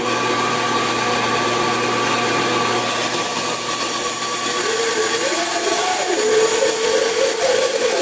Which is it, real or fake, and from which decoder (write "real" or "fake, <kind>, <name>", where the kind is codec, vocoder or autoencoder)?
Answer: real